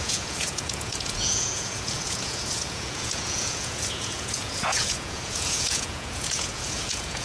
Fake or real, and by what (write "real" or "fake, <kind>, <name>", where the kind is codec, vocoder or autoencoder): fake, vocoder, Vocos